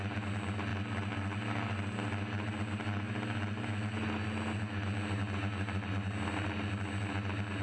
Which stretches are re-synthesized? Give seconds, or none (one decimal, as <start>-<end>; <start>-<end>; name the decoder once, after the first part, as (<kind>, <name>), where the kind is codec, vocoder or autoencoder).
none